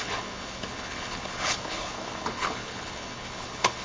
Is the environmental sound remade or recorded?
remade